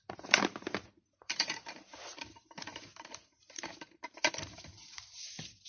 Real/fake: fake